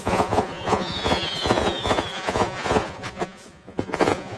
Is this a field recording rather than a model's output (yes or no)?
no